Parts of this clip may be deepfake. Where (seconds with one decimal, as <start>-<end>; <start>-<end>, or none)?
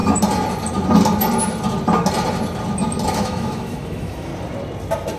3.1-4.3